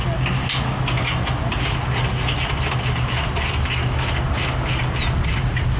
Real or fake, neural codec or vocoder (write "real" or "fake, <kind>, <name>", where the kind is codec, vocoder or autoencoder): real